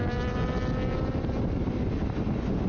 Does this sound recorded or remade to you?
recorded